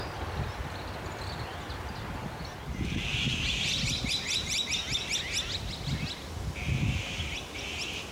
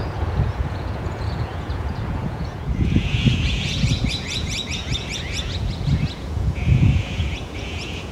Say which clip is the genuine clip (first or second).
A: first